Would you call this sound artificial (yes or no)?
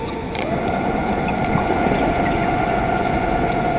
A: yes